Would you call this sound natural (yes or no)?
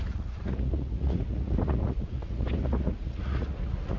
no